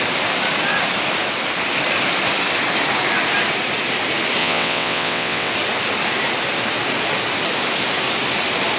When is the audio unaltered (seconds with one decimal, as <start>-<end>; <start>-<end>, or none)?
0.0-4.4; 5.5-8.8